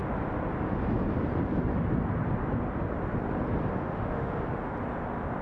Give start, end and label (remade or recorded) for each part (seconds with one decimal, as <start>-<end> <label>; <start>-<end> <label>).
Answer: 0.0-3.7 recorded; 3.7-4.3 remade; 4.3-5.4 recorded